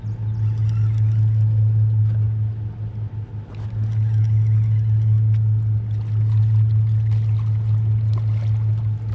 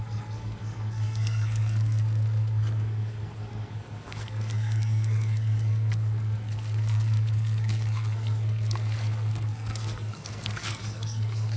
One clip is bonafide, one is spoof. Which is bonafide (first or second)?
first